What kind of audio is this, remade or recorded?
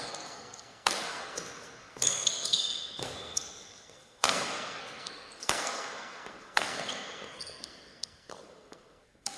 remade